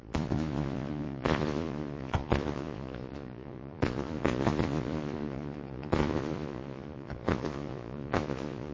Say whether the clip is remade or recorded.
remade